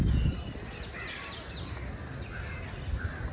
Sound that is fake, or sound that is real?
real